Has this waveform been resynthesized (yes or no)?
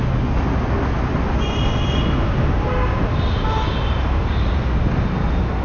no